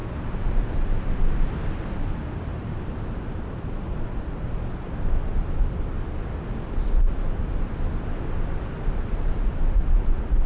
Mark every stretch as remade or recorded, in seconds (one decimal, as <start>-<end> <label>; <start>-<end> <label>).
0.0-10.5 recorded